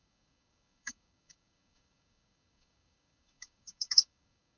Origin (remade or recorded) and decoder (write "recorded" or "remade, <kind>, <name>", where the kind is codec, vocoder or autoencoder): remade, codec, DAC